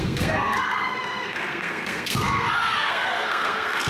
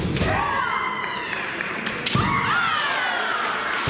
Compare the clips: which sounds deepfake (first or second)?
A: first